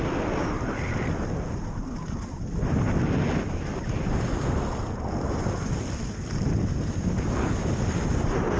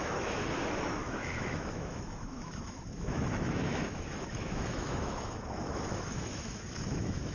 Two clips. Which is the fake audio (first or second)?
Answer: second